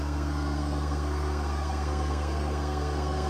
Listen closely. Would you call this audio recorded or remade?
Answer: remade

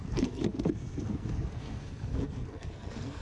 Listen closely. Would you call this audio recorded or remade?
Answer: remade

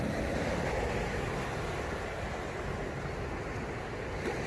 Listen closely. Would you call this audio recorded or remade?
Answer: recorded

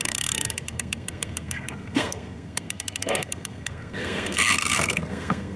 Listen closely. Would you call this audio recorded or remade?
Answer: remade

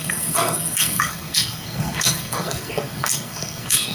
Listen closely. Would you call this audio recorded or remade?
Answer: remade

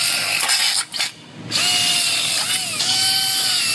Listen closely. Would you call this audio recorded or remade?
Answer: recorded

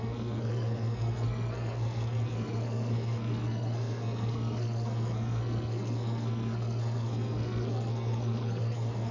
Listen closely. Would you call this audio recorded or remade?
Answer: remade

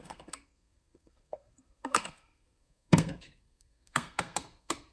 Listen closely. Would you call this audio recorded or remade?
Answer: remade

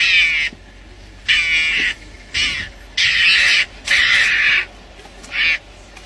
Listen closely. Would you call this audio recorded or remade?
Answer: recorded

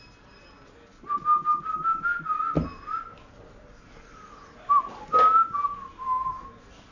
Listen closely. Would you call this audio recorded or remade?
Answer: recorded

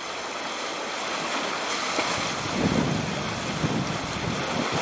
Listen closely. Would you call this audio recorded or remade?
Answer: recorded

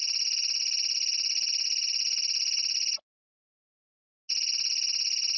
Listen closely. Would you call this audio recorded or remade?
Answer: recorded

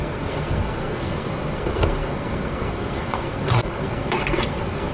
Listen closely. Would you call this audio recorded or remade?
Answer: remade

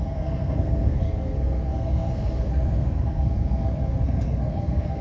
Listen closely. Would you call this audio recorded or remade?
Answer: remade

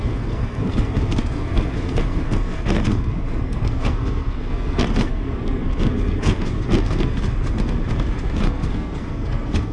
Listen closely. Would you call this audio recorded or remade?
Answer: remade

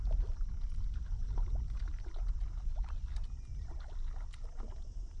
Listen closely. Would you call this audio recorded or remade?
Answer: recorded